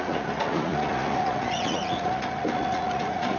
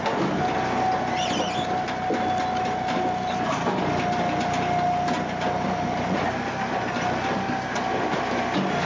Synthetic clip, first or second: first